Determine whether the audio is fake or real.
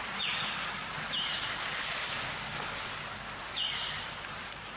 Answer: real